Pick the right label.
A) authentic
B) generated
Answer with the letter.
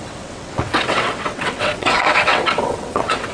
B